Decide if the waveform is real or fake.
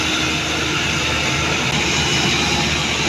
real